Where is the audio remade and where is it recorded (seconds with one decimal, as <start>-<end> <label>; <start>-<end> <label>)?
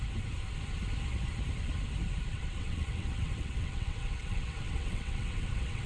0.0-2.3 recorded; 2.3-5.9 remade